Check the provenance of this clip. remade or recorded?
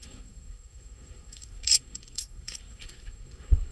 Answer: remade